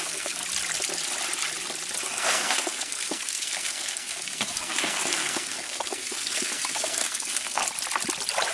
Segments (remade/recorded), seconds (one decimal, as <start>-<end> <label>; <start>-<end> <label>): 0.0-0.4 remade; 0.4-2.0 recorded; 2.0-7.6 remade; 7.6-8.5 recorded